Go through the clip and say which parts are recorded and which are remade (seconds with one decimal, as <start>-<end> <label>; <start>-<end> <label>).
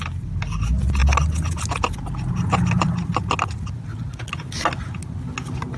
0.0-5.8 recorded